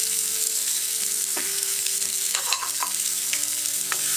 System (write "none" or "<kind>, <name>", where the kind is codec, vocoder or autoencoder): codec, SNAC